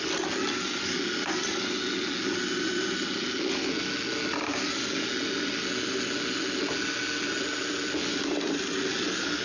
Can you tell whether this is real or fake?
real